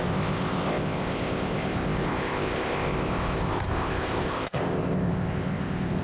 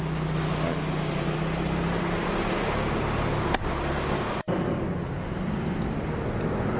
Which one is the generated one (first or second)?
first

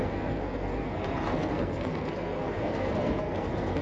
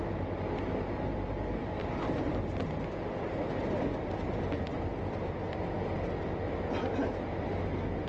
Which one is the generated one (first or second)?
first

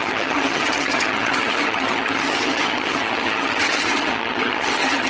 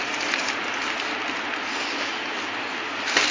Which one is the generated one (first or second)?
first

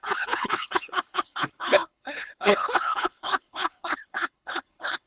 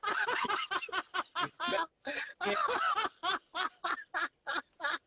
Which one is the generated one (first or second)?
first